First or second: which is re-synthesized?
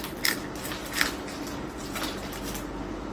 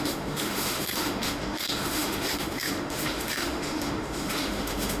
second